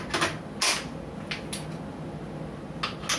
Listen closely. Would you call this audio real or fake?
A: real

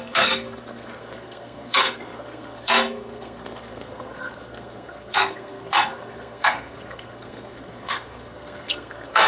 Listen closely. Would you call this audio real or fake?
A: fake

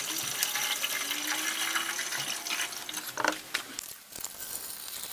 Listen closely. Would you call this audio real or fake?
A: real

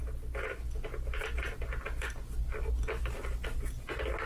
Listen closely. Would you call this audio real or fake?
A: real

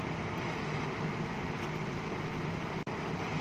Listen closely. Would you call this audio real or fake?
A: real